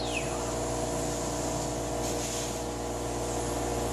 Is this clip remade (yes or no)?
no